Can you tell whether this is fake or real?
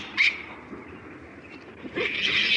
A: real